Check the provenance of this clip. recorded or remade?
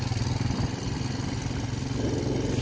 recorded